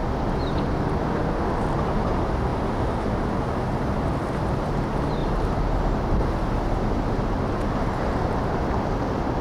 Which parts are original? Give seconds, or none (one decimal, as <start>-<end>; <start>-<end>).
0.0-1.8; 2.5-3.4